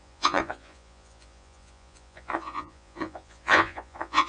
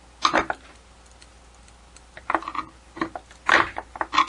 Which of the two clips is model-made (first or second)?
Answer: first